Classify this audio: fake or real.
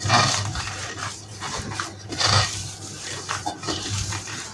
fake